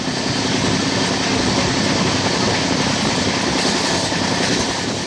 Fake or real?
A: real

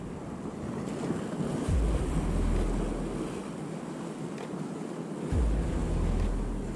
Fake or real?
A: real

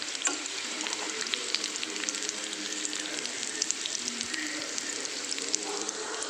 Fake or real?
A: fake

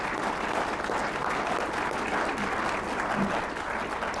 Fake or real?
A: real